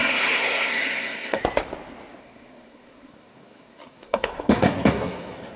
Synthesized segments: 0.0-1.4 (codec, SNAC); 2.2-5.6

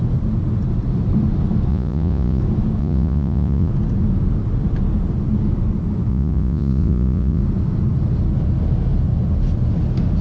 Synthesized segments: 1.7-2.4 (vocoder, Vocos); 2.8-3.7; 6.1-7.4

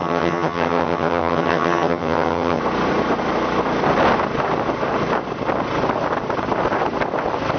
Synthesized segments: 0.0-2.6 (vocoder, HiFi-GAN)

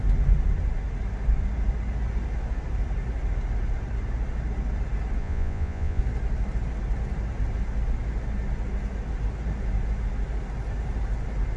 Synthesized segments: 5.2-6.0 (vocoder, Vocos)

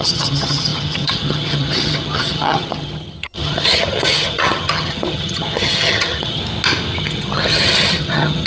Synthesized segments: 0.0-6.4 (vocoder, HiFi-GAN); 7.0-8.5

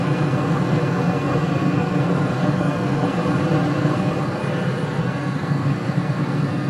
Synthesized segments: 0.0-3.2 (codec, SNAC); 3.8-4.4; 5.0-6.7

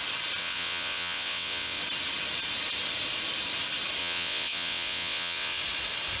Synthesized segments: 0.4-1.8 (vocoder, WaveNeXt); 4.0-5.6

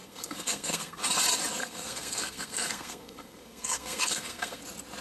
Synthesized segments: 0.0-1.0 (codec, SNAC); 1.6-4.6